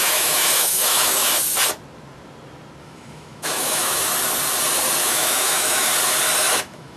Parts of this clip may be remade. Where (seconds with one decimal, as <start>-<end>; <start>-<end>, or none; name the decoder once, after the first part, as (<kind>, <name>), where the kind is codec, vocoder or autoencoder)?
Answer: 0.0-1.3 (autoencoder, DAC-VAE); 2.8-4.1; 5.0-5.9; 6.5-7.0